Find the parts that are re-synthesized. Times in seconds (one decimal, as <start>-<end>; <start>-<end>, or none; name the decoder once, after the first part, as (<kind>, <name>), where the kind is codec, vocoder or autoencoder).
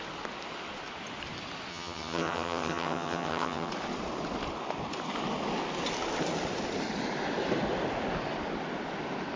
1.7-3.7 (vocoder, HiFi-GAN)